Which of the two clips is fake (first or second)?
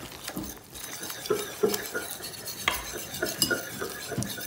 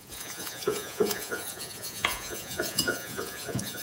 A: second